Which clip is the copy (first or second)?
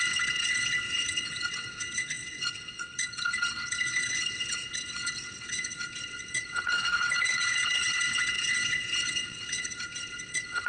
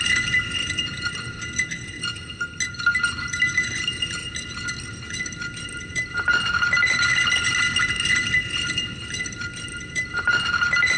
first